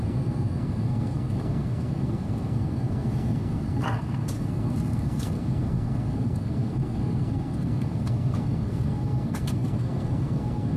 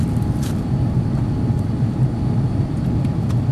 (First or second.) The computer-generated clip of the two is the first